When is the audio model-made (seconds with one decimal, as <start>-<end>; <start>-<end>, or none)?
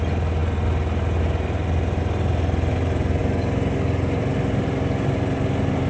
none